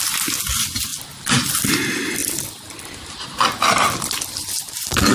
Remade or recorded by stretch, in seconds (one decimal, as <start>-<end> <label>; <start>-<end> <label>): 0.0-5.1 recorded